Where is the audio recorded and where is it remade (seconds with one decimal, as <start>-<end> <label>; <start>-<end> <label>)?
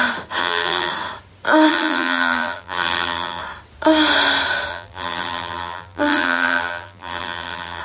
0.0-0.4 recorded; 0.4-0.9 remade; 0.9-1.7 recorded; 1.7-3.4 remade; 3.4-4.7 recorded; 4.7-7.8 remade